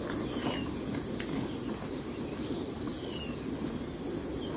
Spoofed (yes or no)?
no